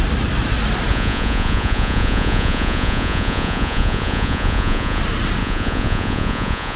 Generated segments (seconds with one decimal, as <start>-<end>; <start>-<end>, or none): 0.9-5.0; 5.4-6.8